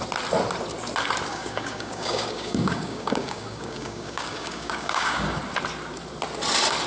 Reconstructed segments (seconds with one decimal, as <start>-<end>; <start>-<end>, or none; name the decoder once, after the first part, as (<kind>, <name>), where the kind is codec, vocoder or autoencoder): 1.3-5.4 (codec, DAC)